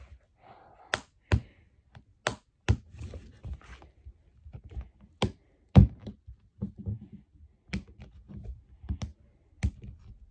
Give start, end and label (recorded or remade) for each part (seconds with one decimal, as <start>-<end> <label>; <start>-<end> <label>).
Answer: 0.0-10.3 recorded

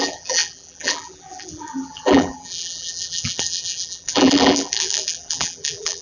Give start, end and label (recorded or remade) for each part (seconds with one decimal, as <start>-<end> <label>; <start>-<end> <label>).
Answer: 0.0-6.0 remade

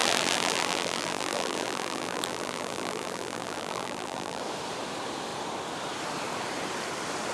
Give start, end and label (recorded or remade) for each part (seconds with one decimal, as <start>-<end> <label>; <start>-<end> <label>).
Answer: 0.0-4.4 remade; 4.4-7.3 recorded